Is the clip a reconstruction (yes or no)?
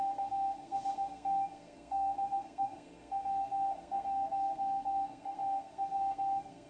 yes